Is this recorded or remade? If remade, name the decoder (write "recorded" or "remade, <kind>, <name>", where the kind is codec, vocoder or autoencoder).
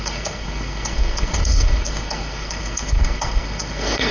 remade, codec, SNAC